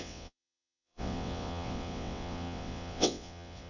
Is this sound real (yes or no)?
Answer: no